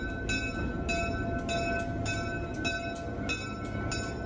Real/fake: real